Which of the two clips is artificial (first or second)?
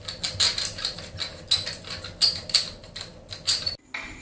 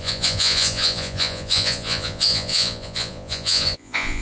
second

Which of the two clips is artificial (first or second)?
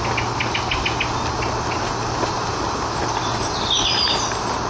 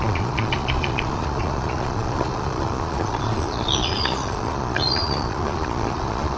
second